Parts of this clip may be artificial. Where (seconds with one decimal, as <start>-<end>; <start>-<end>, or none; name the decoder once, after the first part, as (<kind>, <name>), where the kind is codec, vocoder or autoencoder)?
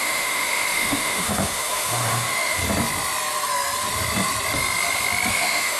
0.0-2.6 (autoencoder, DAC-VAE); 5.3-5.8